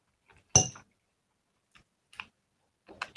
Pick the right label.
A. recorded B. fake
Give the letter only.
A